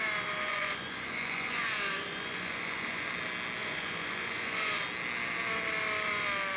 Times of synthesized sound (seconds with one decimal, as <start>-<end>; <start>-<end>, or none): 0.5-3.1; 3.6-4.8